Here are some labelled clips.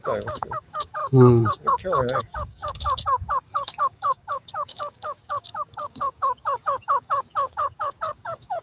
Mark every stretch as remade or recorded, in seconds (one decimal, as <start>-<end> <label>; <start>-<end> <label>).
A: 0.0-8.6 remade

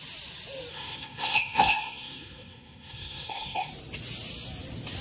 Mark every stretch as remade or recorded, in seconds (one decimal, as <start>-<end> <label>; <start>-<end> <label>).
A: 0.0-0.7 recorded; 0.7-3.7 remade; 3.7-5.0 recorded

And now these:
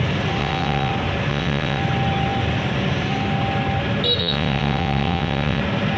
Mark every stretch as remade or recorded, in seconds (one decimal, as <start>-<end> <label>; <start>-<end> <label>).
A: 0.0-0.4 recorded; 0.4-0.9 remade; 0.9-1.3 recorded; 1.3-1.8 remade; 1.8-4.2 recorded; 4.2-5.6 remade; 5.6-6.0 recorded